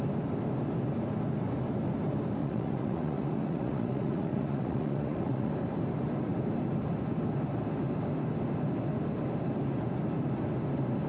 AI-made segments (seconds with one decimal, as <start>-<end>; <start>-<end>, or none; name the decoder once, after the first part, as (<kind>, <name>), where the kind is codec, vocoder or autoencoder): 2.4-5.5 (vocoder, Vocos)